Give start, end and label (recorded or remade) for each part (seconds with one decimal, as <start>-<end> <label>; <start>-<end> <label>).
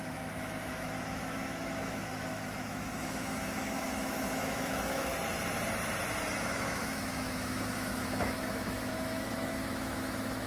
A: 0.0-5.1 remade; 5.1-6.4 recorded; 6.4-10.5 remade